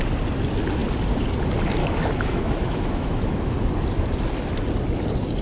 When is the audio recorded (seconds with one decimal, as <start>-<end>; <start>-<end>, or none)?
0.0-1.8; 3.3-5.4